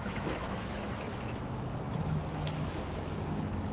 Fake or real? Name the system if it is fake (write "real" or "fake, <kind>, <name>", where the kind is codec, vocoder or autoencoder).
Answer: fake, autoencoder, DAC-VAE